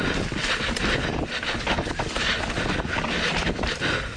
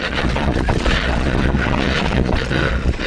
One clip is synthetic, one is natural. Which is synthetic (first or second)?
second